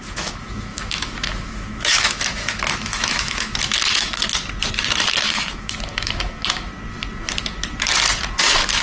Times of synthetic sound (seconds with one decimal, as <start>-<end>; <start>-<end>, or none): 0.0-4.2; 5.2-6.7; 8.4-8.8